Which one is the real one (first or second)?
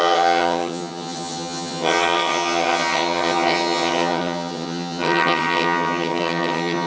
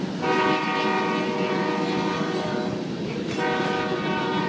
second